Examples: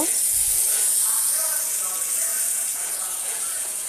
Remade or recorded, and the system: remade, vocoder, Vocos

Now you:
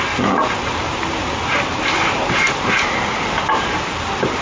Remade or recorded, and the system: recorded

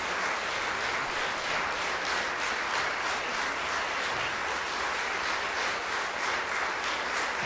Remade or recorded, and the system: recorded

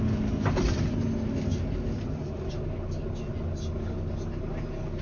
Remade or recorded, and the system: recorded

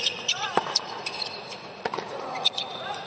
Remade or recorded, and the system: remade, vocoder, Vocos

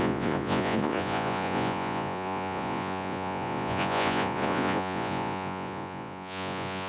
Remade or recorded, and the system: remade, vocoder, Vocos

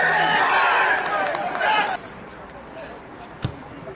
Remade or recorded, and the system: recorded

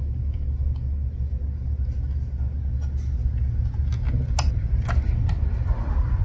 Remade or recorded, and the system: recorded